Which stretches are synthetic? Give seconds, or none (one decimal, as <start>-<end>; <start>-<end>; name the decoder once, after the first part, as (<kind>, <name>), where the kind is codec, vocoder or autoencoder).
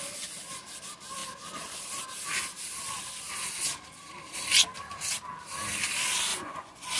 6.3-7.0 (vocoder, Vocos)